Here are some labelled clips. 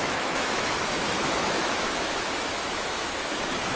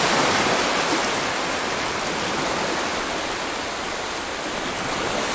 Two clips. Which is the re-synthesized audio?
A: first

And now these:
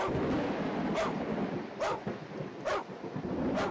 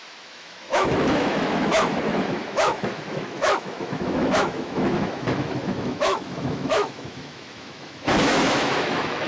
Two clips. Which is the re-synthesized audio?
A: second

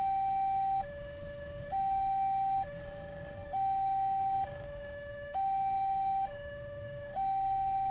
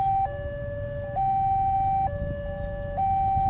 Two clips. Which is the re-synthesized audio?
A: first